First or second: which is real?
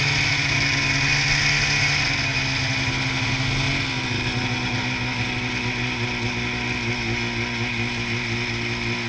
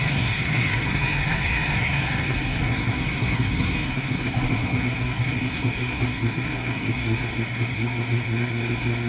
first